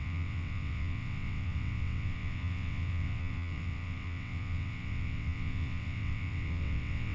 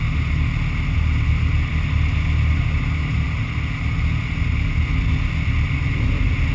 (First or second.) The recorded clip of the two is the second